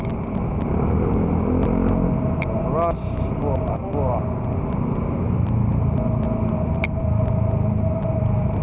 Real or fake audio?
real